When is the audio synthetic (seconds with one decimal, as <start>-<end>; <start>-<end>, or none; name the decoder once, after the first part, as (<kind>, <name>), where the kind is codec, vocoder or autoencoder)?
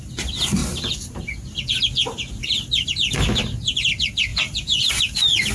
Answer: 4.3-4.9 (vocoder, BigVGAN v2)